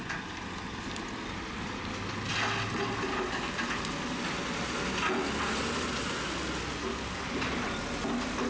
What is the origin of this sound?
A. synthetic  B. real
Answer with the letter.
B